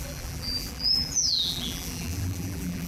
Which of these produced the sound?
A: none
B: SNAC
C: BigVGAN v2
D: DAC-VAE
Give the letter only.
C